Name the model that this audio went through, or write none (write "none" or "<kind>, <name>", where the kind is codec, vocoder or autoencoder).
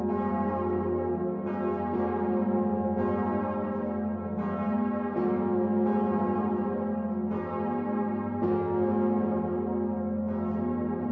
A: none